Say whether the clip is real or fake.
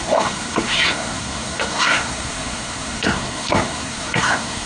fake